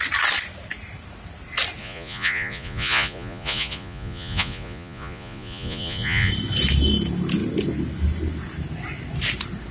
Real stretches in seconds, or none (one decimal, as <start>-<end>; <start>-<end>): 0.0-1.8; 6.3-9.7